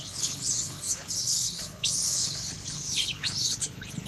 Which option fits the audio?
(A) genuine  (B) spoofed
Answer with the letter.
B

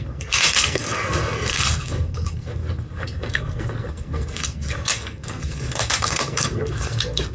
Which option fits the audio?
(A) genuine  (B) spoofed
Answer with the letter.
B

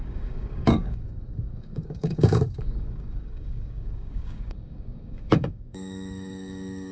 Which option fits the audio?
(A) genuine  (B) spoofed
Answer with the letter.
B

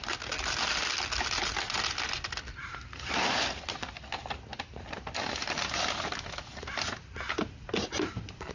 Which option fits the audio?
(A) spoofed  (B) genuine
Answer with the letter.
B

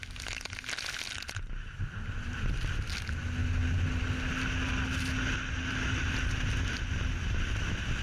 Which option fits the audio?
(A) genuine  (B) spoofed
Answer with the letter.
A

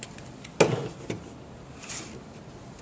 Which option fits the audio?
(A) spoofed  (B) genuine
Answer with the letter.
B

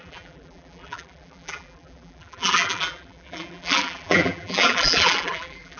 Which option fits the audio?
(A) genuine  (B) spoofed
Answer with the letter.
B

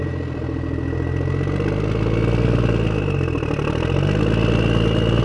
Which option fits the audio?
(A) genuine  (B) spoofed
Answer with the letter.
A